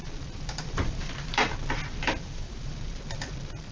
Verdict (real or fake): fake